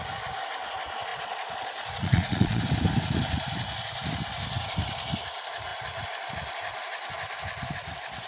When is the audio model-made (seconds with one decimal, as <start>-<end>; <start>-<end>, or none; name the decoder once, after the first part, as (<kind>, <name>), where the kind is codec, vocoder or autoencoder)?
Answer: 1.1-2.6 (vocoder, Vocos)

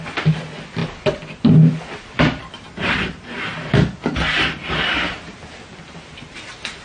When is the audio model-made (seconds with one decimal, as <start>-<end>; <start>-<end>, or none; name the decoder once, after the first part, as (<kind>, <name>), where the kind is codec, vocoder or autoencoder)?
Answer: none

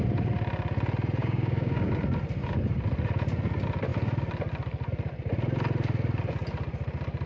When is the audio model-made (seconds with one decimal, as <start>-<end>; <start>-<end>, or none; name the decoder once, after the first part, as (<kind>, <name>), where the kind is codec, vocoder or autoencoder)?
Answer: 1.2-1.9 (codec, DAC)

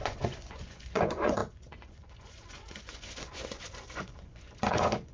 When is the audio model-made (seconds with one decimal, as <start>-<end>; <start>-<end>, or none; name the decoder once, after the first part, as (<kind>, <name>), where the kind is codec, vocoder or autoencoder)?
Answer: 0.0-5.1 (vocoder, Vocos)